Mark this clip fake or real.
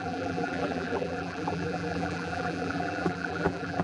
fake